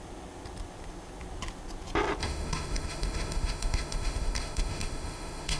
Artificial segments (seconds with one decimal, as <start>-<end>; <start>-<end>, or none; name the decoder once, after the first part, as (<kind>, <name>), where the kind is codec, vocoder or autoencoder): 2.2-5.6 (autoencoder, DAC-VAE)